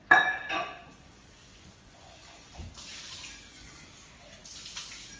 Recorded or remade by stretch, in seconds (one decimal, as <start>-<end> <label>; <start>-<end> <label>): 0.0-2.5 remade; 2.5-3.2 recorded; 3.2-3.8 remade; 3.8-5.2 recorded